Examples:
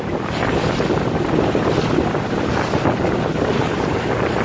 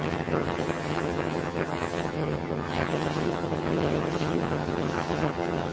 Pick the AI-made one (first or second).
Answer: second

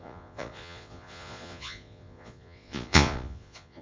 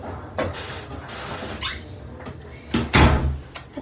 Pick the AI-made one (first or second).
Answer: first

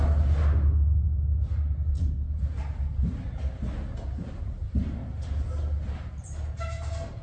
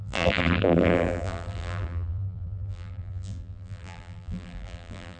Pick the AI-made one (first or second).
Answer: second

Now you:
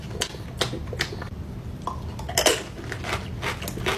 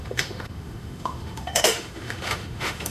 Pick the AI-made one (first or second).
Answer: second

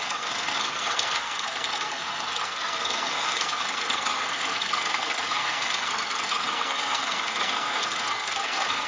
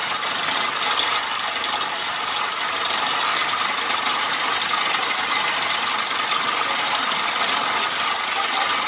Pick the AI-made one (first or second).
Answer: first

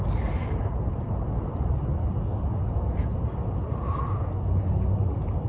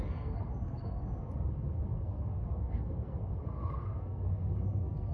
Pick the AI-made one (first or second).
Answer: second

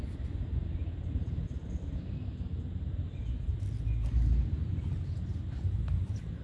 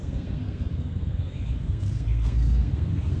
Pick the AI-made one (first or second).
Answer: second